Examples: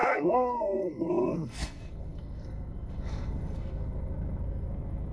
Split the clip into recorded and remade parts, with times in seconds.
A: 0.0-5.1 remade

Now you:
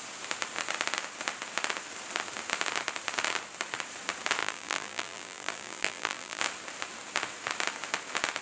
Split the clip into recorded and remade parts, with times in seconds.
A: 0.0-4.4 recorded; 4.4-6.4 remade; 6.4-8.4 recorded

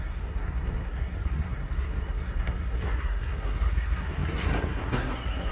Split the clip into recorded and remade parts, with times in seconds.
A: 0.0-5.5 remade

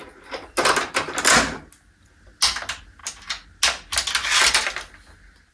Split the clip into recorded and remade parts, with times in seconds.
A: 0.0-5.5 recorded

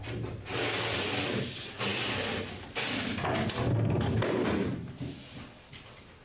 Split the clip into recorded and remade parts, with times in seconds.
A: 0.0-6.2 recorded

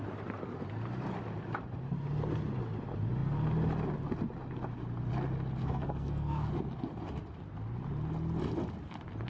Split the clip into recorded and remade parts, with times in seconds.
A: 0.0-5.6 recorded; 5.6-6.5 remade; 6.5-9.3 recorded